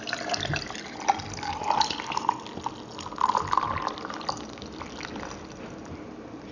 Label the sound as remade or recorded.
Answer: recorded